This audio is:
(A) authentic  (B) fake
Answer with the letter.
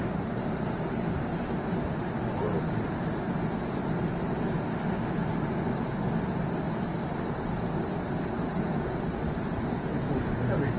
A